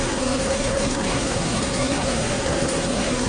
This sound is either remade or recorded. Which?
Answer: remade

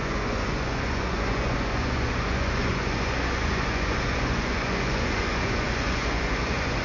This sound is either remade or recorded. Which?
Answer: remade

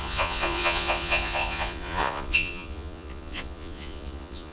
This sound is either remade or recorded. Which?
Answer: remade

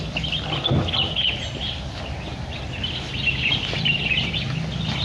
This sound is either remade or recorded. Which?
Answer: recorded